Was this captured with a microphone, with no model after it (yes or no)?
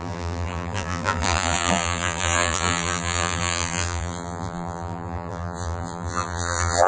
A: no